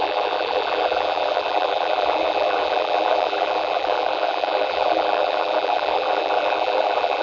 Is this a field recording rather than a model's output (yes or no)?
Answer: no